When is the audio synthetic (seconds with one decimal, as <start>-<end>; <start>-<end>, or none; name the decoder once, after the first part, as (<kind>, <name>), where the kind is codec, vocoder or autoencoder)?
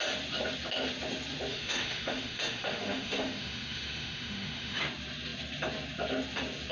1.5-4.8 (autoencoder, DAC-VAE)